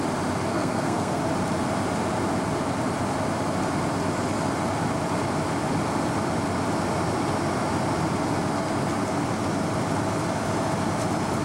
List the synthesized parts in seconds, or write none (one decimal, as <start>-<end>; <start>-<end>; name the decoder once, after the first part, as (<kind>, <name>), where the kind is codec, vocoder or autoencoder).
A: 0.5-1.2 (codec, SNAC)